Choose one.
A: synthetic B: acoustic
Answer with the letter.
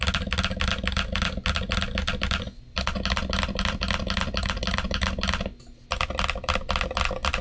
B